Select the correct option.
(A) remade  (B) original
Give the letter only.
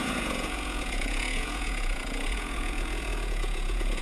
A